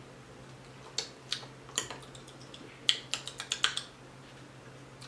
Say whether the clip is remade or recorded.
recorded